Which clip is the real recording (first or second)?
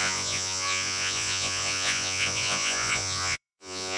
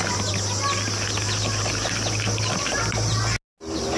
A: second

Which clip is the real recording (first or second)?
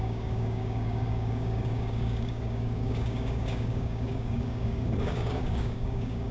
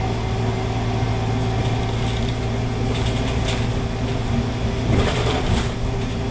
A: second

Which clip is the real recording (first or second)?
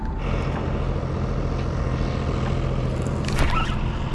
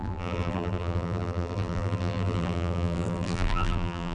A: first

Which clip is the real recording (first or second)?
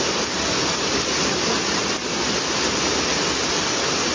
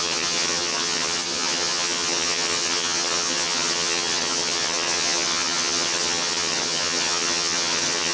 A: first